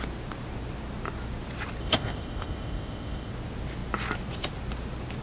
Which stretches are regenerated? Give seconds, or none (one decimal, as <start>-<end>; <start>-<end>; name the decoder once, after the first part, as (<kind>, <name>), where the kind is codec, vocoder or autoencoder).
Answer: 1.8-3.3 (codec, ZipCodec)